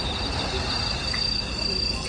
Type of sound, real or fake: real